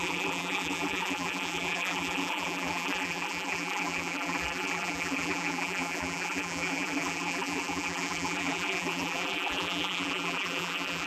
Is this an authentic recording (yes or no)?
no